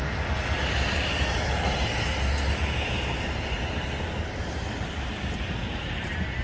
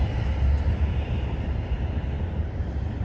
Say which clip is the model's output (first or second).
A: second